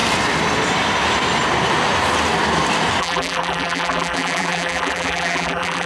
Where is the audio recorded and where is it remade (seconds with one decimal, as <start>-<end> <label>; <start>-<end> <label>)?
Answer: 0.0-3.0 recorded; 3.0-5.9 remade